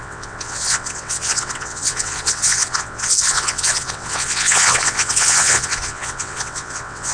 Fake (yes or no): yes